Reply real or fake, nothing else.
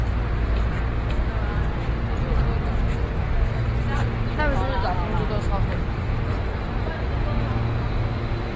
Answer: real